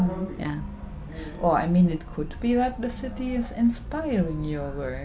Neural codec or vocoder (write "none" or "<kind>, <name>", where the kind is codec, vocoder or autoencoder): none